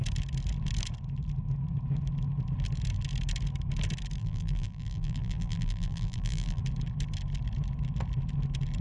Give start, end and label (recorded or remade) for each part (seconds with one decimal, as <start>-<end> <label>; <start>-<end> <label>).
0.0-4.2 recorded; 4.2-6.6 remade; 6.6-8.8 recorded